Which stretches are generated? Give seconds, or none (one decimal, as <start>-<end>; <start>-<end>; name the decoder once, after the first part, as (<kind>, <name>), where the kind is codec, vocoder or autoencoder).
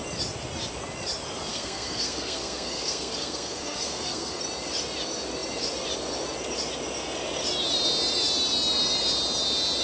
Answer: 1.5-4.4 (codec, SNAC)